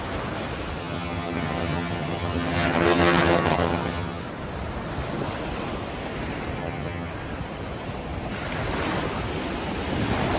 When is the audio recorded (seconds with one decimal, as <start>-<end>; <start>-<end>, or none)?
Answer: 0.0-0.8; 4.2-6.6; 7.1-10.4